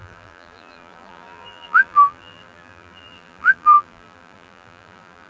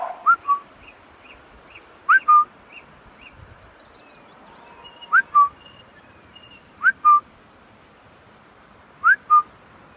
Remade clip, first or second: first